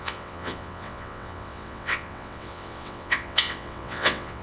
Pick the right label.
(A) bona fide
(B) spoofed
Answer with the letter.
B